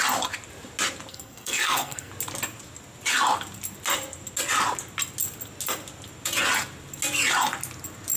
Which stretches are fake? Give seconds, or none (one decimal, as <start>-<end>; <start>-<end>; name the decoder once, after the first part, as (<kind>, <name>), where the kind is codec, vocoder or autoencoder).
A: 1.1-2.1 (codec, SNAC)